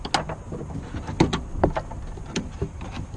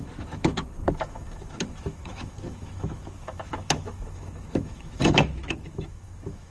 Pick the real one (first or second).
first